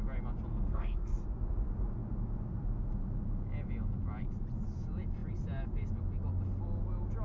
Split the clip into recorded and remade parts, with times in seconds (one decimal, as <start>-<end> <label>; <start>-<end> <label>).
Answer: 0.0-0.5 recorded; 0.5-1.2 remade; 1.2-7.2 recorded